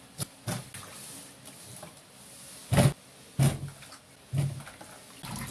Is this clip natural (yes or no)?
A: yes